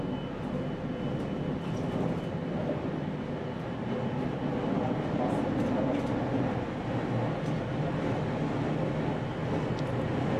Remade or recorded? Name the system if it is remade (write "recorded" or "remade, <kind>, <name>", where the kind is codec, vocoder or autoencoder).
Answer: recorded